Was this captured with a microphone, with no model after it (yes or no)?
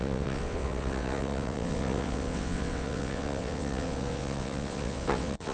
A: no